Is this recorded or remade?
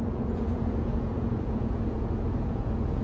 remade